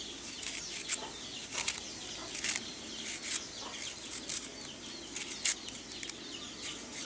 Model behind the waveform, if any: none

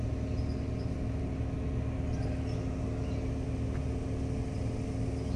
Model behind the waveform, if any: none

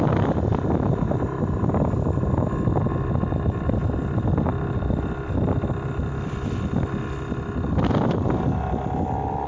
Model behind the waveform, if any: none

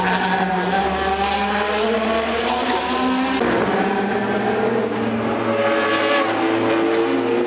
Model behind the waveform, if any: none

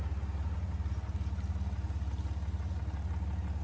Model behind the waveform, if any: none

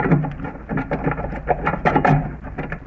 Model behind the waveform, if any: none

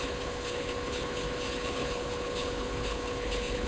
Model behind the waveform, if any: codec, HILCodec